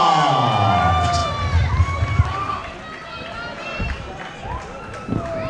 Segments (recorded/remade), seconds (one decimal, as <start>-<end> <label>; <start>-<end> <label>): 0.0-5.5 recorded